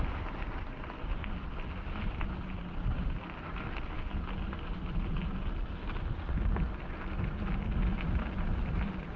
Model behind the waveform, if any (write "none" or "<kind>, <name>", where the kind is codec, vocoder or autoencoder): none